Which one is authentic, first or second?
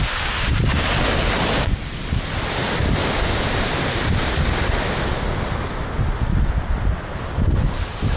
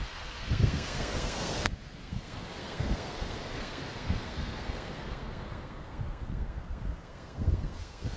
first